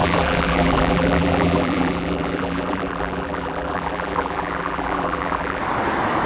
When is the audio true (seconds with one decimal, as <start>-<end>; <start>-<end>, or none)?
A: 5.6-6.3